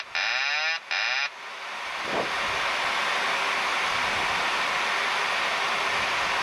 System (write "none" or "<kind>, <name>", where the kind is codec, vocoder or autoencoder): none